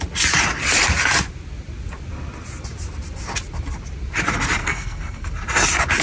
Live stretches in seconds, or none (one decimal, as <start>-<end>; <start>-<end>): 0.0-4.6; 5.3-6.0